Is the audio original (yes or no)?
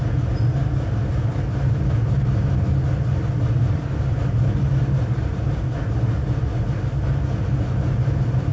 yes